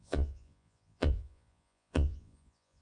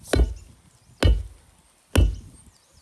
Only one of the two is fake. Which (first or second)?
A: first